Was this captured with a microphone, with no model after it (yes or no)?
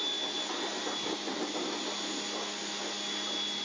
yes